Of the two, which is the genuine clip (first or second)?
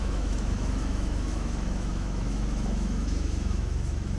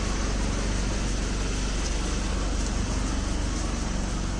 second